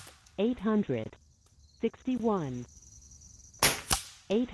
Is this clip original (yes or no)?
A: yes